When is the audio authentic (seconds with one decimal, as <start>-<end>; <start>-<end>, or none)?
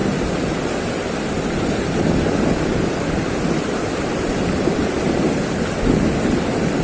0.0-6.8